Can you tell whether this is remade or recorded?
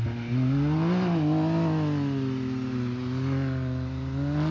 recorded